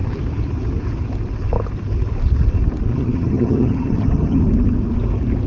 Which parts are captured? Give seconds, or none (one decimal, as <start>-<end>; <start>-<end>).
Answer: 0.0-2.9; 4.4-5.5